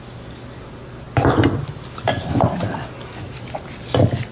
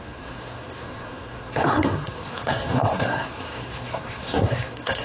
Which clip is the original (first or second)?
first